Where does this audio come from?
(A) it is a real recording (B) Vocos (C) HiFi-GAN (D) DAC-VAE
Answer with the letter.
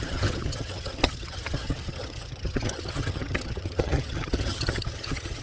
C